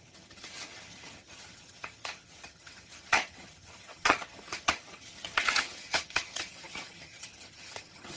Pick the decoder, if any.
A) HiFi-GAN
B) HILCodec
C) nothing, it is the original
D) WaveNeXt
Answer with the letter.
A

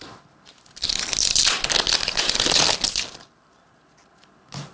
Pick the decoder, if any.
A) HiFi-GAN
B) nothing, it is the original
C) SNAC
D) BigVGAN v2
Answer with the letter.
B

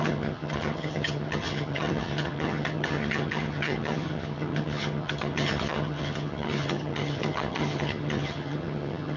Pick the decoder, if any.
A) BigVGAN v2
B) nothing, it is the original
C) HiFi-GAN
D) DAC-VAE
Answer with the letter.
C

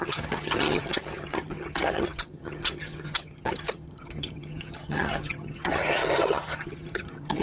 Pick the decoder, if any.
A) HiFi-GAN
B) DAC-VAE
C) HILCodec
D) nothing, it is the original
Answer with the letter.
A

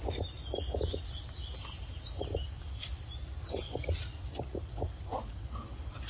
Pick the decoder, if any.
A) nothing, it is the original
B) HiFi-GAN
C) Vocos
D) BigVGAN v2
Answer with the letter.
A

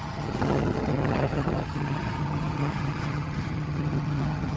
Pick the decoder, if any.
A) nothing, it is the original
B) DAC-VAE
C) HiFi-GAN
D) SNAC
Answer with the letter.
C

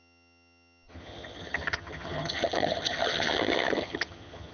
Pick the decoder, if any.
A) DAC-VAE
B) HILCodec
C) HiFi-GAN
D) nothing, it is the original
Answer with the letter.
C